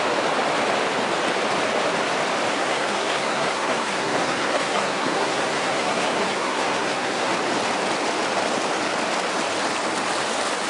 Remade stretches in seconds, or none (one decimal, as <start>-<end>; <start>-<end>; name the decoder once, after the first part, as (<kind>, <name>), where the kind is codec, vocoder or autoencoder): 2.5-7.3 (codec, SNAC)